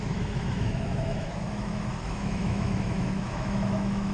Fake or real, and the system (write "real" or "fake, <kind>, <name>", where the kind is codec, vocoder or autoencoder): fake, autoencoder, DAC-VAE